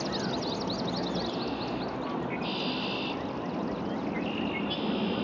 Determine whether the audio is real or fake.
real